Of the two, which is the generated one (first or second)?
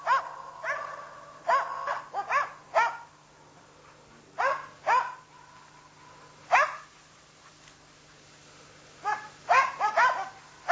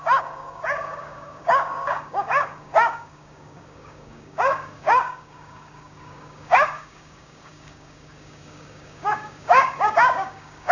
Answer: second